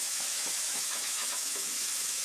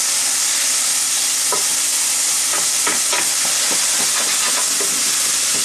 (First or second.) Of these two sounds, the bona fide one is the second